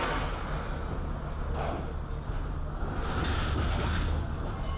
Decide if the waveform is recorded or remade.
recorded